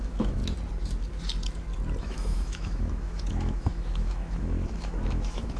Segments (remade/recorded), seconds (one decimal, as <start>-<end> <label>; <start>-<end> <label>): 0.0-0.4 remade; 0.4-2.0 recorded; 2.0-5.6 remade